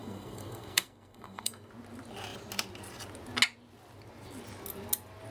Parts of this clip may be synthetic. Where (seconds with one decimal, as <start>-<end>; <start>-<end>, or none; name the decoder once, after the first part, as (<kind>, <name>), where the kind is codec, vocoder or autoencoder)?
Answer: 0.0-1.7 (codec, SNAC)